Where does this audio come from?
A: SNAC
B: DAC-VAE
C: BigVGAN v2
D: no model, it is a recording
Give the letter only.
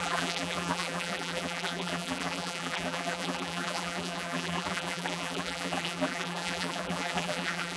C